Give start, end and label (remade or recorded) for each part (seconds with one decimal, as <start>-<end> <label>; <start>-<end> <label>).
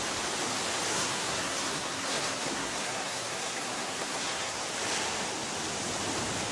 0.0-0.9 recorded; 0.9-4.6 remade; 4.6-6.5 recorded